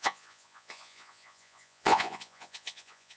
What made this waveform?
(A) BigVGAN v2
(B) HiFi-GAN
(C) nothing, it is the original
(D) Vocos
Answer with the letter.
D